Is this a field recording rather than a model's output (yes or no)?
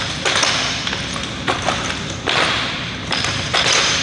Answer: yes